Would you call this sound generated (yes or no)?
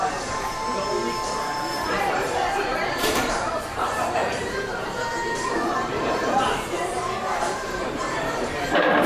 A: yes